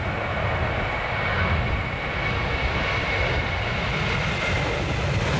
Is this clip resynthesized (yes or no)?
no